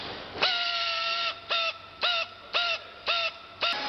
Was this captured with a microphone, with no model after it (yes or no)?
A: yes